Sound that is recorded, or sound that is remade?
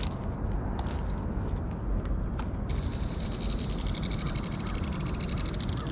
recorded